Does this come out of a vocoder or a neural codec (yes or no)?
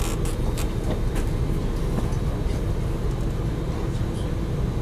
no